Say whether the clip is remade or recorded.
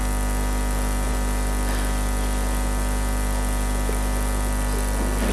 recorded